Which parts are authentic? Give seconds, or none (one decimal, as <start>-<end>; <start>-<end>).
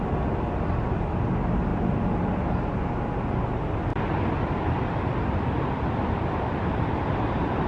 0.0-7.7